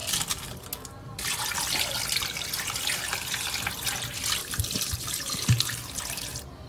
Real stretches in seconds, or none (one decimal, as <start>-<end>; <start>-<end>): 0.0-4.4; 6.0-6.7